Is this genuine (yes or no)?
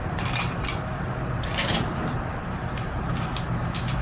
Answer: no